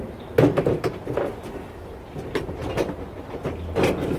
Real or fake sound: real